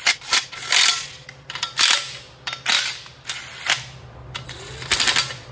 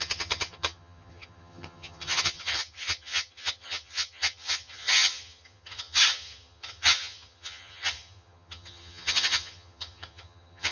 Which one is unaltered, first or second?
first